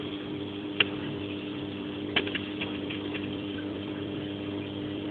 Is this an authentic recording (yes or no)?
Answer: no